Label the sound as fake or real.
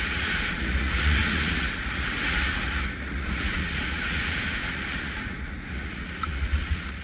fake